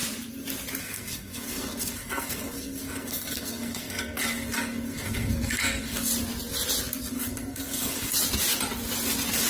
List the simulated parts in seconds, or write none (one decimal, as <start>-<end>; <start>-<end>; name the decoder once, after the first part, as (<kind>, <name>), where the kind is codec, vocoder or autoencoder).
0.8-6.1 (codec, SNAC); 7.1-8.1